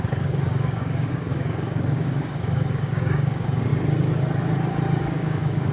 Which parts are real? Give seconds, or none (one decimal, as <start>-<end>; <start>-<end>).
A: 3.7-5.0